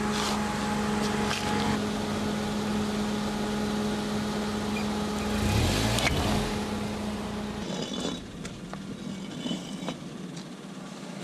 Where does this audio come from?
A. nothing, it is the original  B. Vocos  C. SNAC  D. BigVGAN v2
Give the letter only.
A